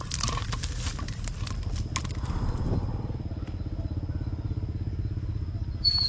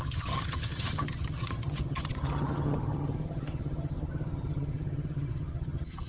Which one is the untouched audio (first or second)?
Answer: first